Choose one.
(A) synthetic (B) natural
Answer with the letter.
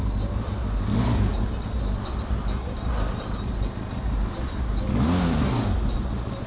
B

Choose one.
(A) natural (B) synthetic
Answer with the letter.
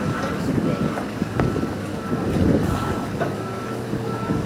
B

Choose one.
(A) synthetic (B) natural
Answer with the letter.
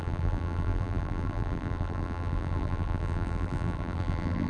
A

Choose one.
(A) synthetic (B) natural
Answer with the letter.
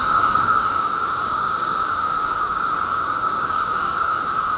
A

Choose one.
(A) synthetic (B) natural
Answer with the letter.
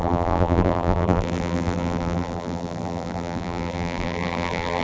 A